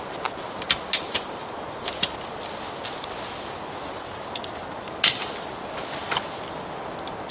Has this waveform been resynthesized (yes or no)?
no